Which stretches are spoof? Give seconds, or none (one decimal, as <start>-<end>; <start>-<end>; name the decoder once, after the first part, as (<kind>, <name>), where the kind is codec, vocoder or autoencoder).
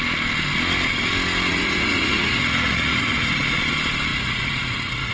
1.5-3.6 (vocoder, Vocos); 4.1-5.1